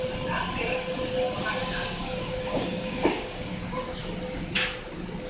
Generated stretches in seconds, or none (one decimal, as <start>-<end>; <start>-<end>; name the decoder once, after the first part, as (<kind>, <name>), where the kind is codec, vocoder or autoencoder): 1.6-3.6 (codec, DAC)